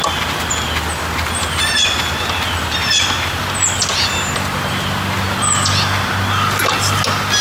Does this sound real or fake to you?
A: real